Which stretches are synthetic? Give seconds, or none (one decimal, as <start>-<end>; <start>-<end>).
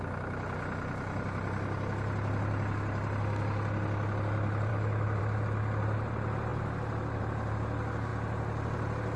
4.7-5.2